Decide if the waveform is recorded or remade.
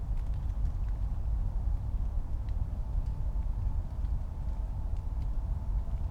recorded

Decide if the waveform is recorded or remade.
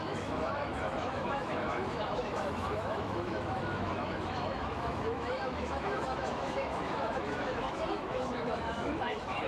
remade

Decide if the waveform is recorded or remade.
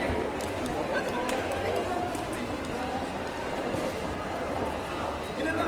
recorded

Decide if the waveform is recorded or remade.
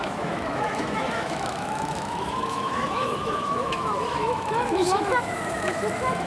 remade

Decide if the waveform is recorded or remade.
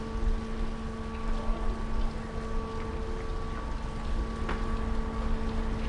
recorded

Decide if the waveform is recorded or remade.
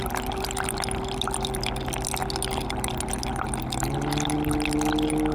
recorded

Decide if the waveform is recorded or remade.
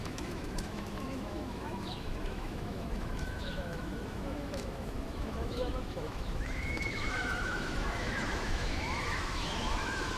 remade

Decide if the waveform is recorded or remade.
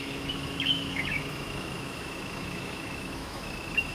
remade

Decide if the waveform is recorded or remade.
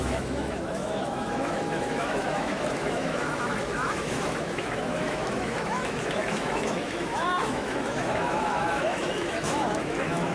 remade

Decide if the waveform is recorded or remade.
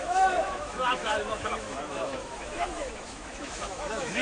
remade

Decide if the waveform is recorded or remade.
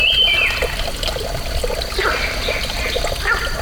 recorded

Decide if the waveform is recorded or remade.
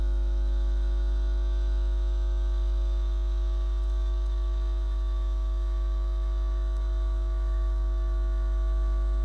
remade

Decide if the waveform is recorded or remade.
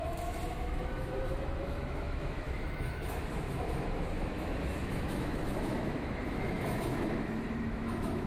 remade